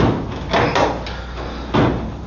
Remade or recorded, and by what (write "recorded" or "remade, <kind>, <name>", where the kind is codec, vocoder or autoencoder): recorded